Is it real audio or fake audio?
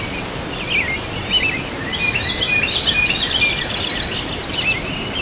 real